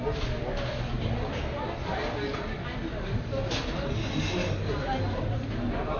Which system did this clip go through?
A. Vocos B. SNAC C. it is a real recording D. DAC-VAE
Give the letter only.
C